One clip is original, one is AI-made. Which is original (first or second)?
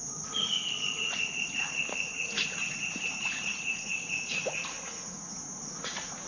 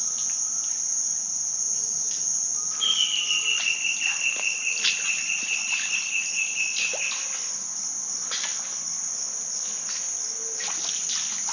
second